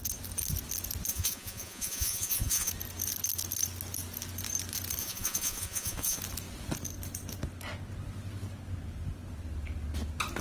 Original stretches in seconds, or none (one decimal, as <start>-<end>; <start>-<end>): 0.0-1.1; 2.7-5.0; 6.2-10.4